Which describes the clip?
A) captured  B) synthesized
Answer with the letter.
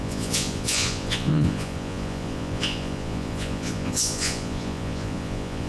B